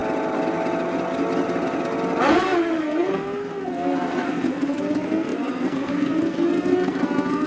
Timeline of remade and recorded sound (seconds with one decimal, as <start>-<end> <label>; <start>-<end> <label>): 0.0-2.3 recorded; 2.3-7.5 remade